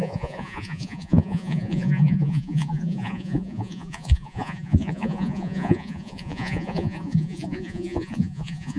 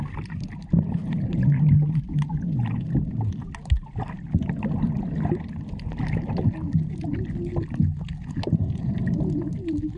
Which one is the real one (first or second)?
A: second